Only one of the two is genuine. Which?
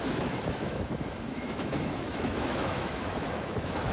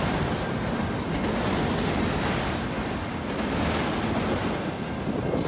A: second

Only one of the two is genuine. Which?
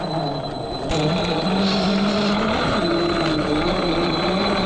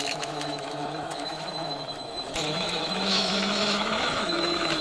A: first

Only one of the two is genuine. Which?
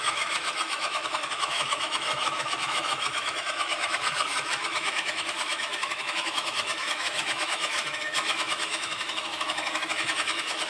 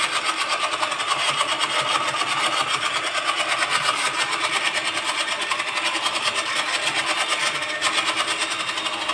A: second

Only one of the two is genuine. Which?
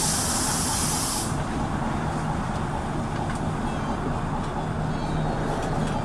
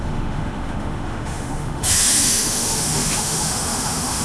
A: first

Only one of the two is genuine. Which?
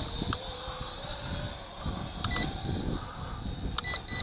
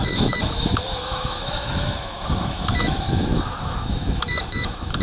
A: first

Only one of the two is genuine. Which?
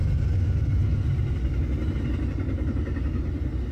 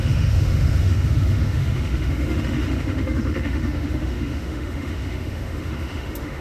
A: first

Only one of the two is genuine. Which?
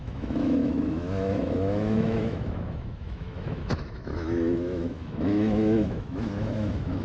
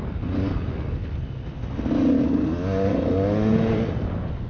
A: second